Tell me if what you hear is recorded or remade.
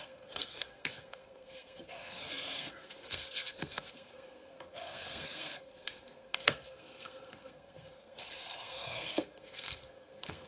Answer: remade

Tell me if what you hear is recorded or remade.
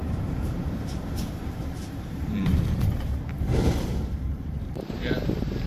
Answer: remade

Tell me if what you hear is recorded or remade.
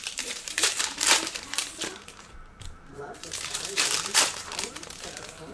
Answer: remade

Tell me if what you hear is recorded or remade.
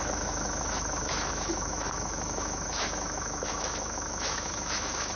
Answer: remade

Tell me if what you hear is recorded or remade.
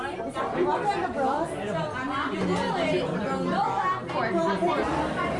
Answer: recorded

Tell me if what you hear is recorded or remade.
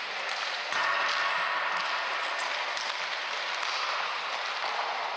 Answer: recorded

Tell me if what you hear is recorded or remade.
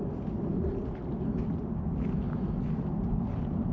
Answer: recorded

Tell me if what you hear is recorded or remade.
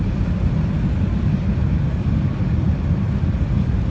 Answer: recorded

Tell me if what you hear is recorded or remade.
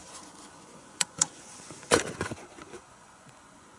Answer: remade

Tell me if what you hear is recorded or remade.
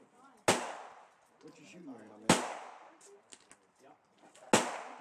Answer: recorded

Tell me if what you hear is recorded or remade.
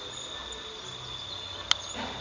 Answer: recorded